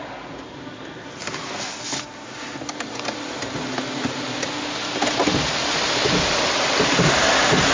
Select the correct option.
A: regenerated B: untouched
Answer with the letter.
B